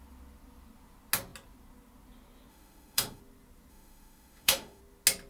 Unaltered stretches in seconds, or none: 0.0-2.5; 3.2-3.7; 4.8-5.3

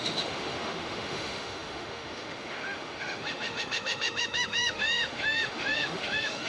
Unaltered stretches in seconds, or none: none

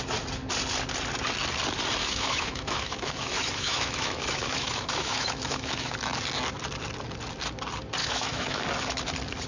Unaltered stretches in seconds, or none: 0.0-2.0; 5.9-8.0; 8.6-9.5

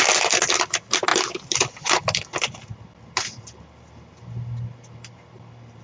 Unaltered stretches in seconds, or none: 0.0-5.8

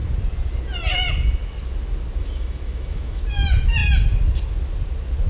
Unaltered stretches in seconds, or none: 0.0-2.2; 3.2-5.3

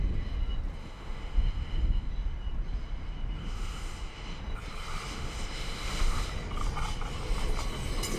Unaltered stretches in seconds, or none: 0.0-0.8; 2.1-3.4; 4.4-5.1; 6.3-8.2